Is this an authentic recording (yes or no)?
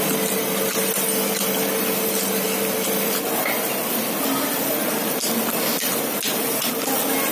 no